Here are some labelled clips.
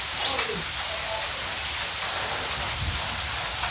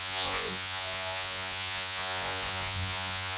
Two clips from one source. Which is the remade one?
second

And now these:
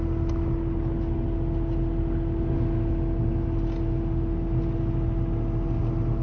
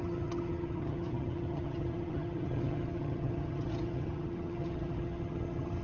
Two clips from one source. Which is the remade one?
second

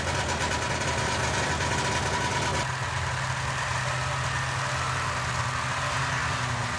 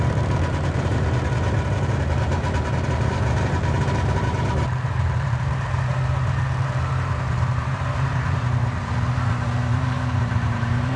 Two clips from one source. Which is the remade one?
second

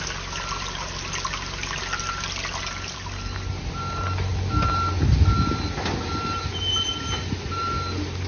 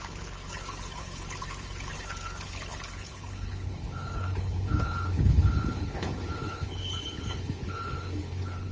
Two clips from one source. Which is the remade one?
second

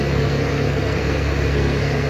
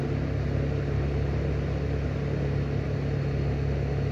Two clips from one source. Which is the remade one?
first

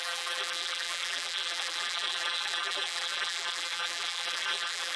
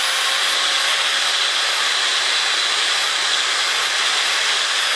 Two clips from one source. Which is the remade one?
first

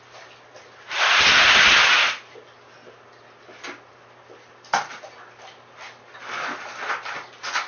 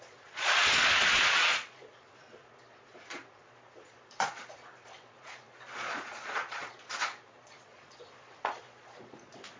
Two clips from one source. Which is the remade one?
second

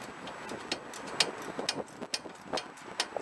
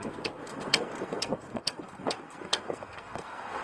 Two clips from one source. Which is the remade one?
second